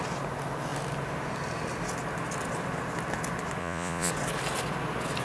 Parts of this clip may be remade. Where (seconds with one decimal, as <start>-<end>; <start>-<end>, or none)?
3.6-4.1